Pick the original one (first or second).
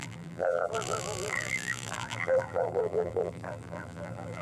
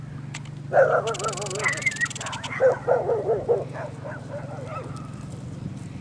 second